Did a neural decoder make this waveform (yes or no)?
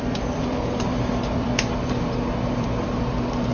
yes